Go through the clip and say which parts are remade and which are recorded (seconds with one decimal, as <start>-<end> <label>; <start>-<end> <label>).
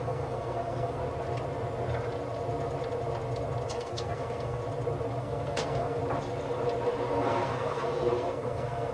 0.0-1.0 remade; 1.0-3.7 recorded; 3.7-4.6 remade; 4.6-5.2 recorded; 5.2-6.0 remade; 6.0-7.1 recorded; 7.1-8.9 remade